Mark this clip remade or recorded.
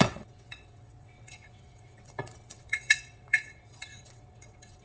remade